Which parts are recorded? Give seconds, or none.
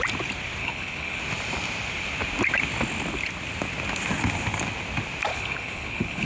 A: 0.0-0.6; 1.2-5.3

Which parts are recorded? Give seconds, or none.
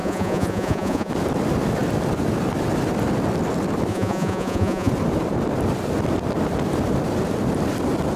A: 1.1-3.9; 4.9-8.2